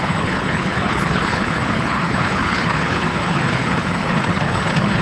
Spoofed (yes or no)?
yes